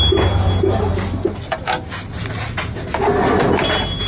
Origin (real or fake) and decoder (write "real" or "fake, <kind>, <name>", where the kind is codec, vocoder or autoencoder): real